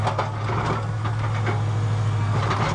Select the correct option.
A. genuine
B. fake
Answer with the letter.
A